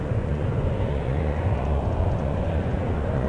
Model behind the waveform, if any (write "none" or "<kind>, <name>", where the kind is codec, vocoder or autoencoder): vocoder, Vocos